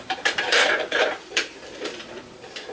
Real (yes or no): no